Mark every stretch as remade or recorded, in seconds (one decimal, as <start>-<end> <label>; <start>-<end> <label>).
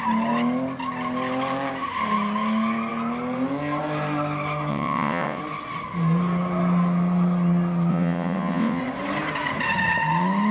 0.0-4.7 recorded; 4.7-5.4 remade; 5.4-7.9 recorded; 7.9-8.8 remade; 8.8-10.5 recorded